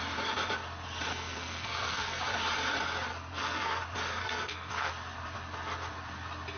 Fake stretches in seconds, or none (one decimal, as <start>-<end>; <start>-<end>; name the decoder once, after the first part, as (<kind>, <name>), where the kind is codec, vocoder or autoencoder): 1.1-2.2 (codec, SNAC); 3.1-3.8; 4.2-4.9